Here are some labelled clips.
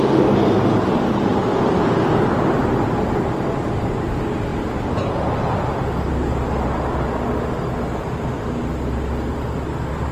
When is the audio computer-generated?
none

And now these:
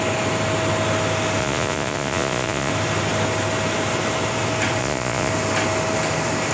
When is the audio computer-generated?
1.4-2.7 (vocoder, Vocos); 4.8-5.3

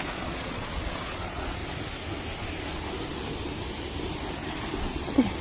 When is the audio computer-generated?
0.0-1.6 (vocoder, Vocos); 4.8-5.4

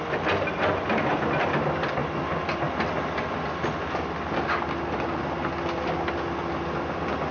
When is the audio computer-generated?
none

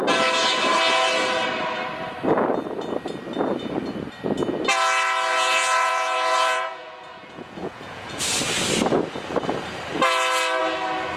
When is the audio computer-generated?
5.3-8.2 (vocoder, Vocos)

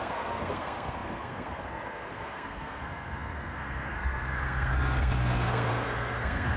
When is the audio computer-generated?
0.0-6.6 (codec, SNAC)

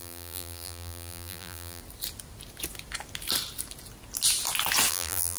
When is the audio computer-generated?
0.0-1.8 (vocoder, BigVGAN v2); 4.9-5.4

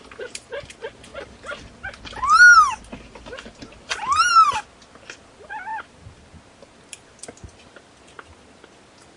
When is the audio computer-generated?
none